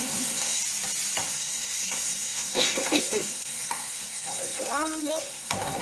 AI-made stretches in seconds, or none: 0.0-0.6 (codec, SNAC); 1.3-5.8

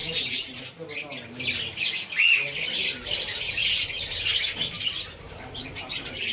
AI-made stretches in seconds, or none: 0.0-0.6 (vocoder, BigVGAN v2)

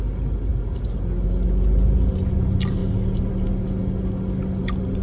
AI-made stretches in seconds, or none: none